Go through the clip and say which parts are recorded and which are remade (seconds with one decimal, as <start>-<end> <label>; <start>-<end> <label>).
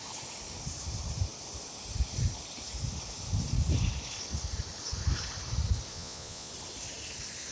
0.0-5.9 recorded; 5.9-6.5 remade; 6.5-7.5 recorded